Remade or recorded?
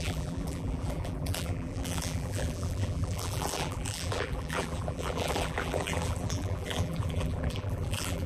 remade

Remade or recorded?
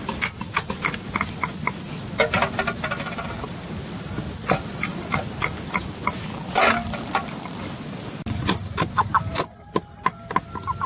recorded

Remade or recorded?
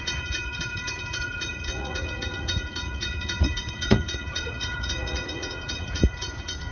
remade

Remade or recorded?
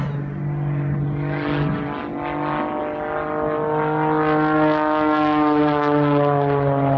recorded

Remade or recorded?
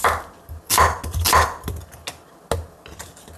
recorded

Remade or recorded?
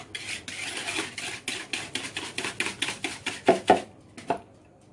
recorded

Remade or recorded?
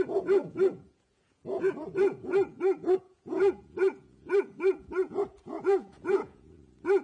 remade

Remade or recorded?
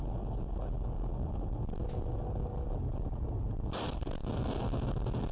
recorded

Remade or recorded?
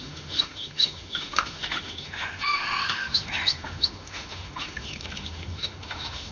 remade